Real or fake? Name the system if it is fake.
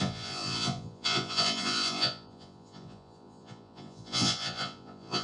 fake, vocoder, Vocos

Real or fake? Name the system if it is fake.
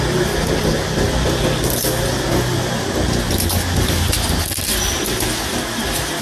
real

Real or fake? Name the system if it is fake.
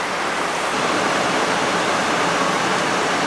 real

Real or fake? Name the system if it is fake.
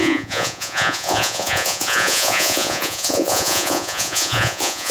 fake, vocoder, Vocos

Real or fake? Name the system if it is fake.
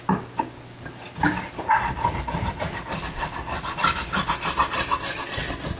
real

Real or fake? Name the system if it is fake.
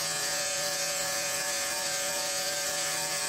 fake, vocoder, Vocos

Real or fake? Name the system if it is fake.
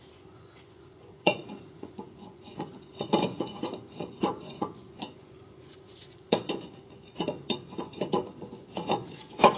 fake, vocoder, Vocos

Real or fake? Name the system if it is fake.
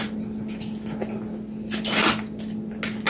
real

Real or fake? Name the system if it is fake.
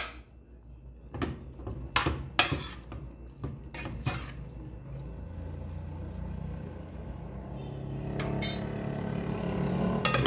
real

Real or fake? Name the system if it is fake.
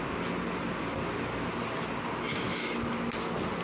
real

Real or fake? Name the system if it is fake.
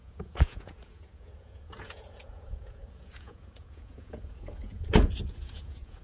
fake, vocoder, Vocos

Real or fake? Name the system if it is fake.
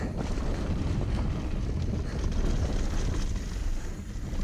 real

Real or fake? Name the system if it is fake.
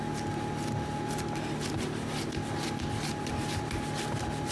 real